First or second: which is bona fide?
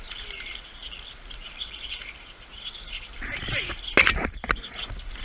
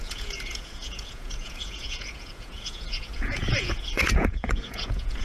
first